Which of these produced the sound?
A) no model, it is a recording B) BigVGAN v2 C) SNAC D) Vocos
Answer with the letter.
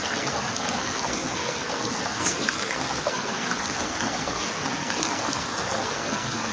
C